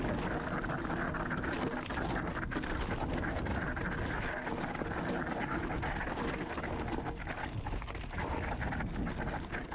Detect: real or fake real